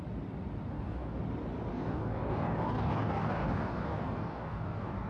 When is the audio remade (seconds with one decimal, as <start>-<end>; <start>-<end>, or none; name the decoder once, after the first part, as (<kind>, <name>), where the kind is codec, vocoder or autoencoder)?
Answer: 0.7-1.2 (codec, DAC); 1.7-5.1